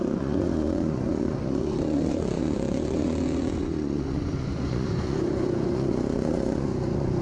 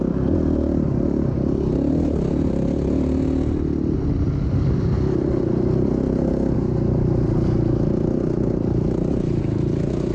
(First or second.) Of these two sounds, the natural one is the second